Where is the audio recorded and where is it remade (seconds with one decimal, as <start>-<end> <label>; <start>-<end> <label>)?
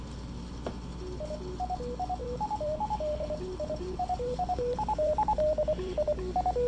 0.0-2.2 recorded; 2.2-6.2 remade; 6.2-6.7 recorded